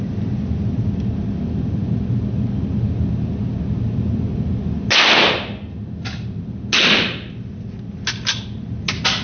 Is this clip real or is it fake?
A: real